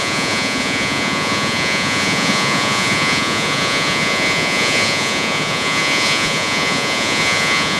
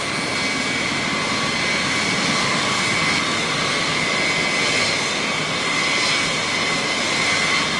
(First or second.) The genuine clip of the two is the second